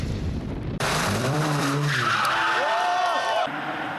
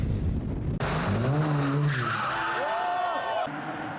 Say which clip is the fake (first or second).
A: first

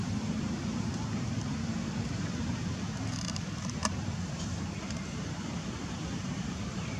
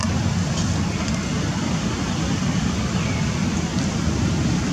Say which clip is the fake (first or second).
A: first